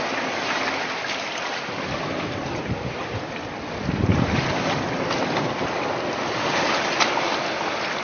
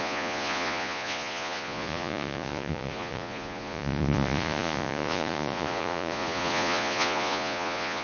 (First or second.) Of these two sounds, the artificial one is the second